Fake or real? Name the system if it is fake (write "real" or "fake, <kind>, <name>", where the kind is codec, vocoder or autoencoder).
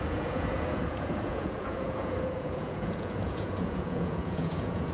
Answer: fake, vocoder, Vocos